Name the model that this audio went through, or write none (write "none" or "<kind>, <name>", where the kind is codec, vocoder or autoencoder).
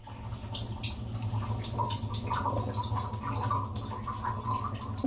none